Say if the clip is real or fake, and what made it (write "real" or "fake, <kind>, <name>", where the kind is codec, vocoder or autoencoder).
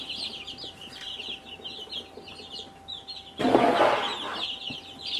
real